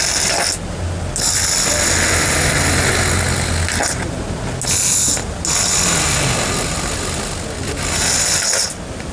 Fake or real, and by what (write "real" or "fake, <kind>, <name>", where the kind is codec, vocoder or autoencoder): real